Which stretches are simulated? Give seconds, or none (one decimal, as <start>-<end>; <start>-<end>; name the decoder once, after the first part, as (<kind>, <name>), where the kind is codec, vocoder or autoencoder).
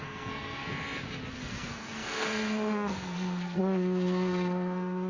0.0-0.6 (codec, SNAC); 1.3-5.1